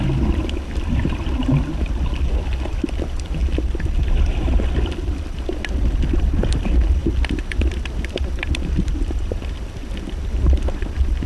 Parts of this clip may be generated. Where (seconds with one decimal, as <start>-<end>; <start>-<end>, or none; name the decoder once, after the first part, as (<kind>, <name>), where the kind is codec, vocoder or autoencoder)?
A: 0.0-3.4 (vocoder, BigVGAN v2); 4.8-7.0; 7.8-11.3